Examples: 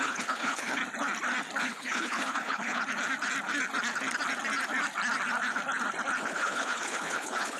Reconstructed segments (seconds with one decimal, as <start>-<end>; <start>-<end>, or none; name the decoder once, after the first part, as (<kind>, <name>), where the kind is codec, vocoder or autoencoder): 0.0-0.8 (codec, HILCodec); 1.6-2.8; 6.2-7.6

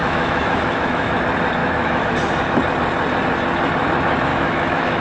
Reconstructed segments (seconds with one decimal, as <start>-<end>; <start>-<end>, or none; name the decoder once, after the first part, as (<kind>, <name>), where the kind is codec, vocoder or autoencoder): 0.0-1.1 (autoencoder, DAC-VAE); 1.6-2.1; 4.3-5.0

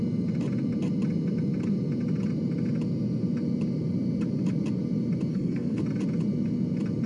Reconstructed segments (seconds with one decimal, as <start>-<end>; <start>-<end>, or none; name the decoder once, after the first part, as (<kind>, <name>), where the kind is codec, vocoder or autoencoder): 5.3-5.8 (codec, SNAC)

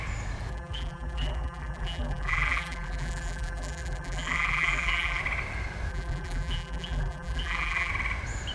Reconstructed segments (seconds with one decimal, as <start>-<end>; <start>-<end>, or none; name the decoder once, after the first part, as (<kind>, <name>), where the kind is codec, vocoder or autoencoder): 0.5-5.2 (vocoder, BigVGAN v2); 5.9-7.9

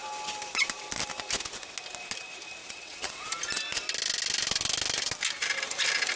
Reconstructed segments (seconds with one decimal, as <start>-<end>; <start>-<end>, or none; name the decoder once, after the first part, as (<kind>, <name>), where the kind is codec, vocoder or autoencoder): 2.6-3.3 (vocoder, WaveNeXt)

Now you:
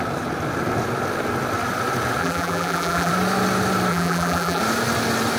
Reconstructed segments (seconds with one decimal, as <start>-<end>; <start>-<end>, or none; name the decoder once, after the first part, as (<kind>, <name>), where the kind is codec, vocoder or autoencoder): 2.2-3.1 (vocoder, BigVGAN v2); 3.9-4.6